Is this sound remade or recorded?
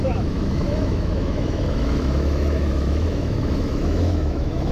remade